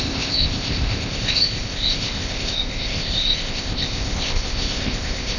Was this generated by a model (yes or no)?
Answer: yes